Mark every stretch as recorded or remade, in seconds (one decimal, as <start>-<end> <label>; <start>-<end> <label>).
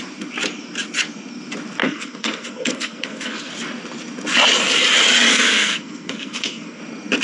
0.0-1.8 recorded; 1.8-3.5 remade; 3.5-5.3 recorded; 5.3-6.8 remade; 6.8-7.2 recorded